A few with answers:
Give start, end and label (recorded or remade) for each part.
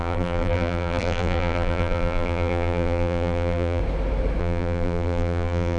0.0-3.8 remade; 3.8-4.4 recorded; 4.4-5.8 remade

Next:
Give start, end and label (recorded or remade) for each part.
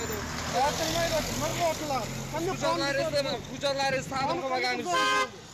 0.0-5.5 recorded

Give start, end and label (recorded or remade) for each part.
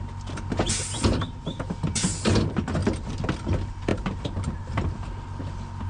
0.0-1.5 recorded; 1.5-2.0 remade; 2.0-2.8 recorded; 2.8-3.5 remade; 3.5-3.9 recorded; 3.9-4.7 remade; 4.7-5.9 recorded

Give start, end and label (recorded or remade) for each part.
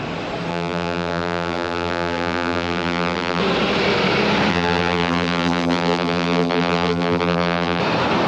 0.0-0.5 recorded; 0.5-3.4 remade; 3.4-4.5 recorded; 4.5-7.8 remade; 7.8-8.3 recorded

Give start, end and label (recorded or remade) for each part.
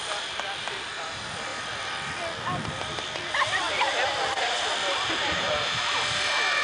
0.0-1.5 recorded; 1.5-5.5 remade; 5.5-6.6 recorded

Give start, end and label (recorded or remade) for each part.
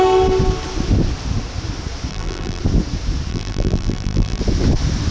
0.0-2.1 recorded; 2.1-2.6 remade; 2.6-3.3 recorded; 3.3-4.4 remade; 4.4-5.1 recorded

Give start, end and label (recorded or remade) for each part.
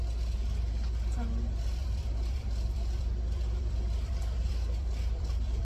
0.0-1.8 recorded; 1.8-5.6 remade